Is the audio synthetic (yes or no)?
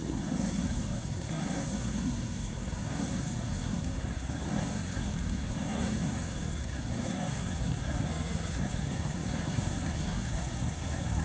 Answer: yes